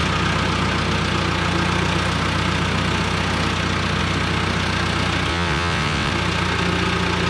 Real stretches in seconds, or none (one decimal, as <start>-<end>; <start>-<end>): 0.0-5.3; 6.1-7.3